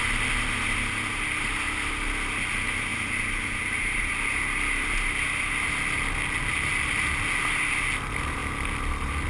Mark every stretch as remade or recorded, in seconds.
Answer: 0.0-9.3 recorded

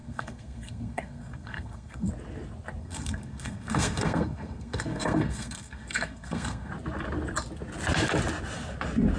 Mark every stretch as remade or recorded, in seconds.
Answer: 0.0-2.1 remade; 2.1-2.8 recorded; 2.8-6.7 remade; 6.7-9.2 recorded

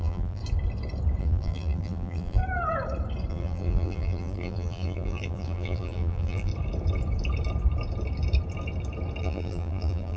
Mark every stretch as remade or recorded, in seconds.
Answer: 0.0-0.4 remade; 0.4-1.2 recorded; 1.2-2.4 remade; 2.4-3.3 recorded; 3.3-6.5 remade; 6.5-9.2 recorded; 9.2-10.2 remade

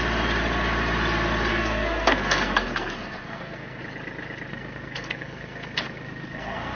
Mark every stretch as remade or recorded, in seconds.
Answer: 0.0-1.5 recorded; 1.5-3.8 remade; 3.8-4.5 recorded; 4.5-6.8 remade

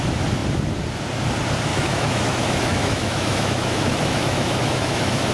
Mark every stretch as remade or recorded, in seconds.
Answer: 0.0-1.7 recorded; 1.7-5.3 remade

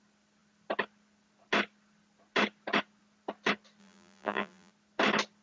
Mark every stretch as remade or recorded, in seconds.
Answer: 0.0-3.8 recorded; 3.8-4.7 remade; 4.7-5.4 recorded